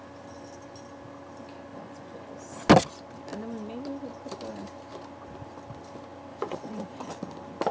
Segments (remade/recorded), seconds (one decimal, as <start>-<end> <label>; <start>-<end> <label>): 0.0-1.7 recorded; 1.7-2.3 remade; 2.3-6.3 recorded; 6.3-7.1 remade; 7.1-7.7 recorded